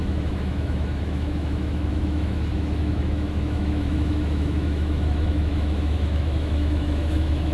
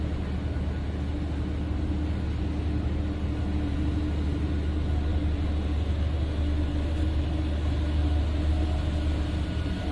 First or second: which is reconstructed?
first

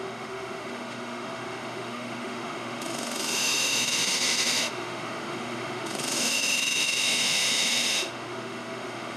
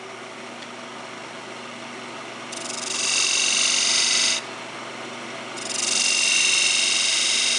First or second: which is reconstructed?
first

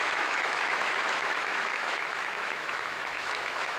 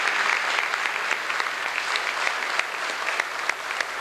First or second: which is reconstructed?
first